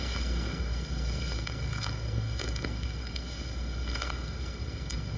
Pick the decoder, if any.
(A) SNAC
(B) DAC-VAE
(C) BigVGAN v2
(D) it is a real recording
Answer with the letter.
A